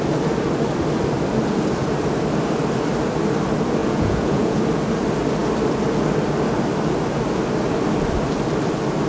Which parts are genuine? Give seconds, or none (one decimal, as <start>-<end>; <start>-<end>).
0.0-3.8; 4.6-9.1